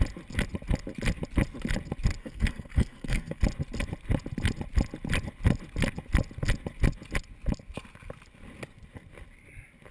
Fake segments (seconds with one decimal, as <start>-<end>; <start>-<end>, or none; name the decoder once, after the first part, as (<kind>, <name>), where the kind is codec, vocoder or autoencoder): 2.2-3.4 (codec, SNAC)